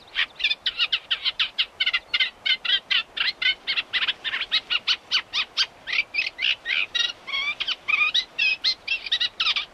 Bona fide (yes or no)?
yes